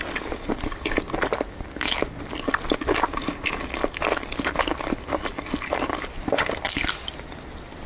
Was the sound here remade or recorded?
recorded